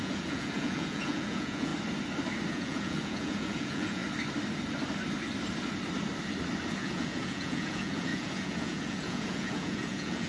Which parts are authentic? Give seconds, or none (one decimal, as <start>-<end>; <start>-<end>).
1.7-2.5; 4.0-6.8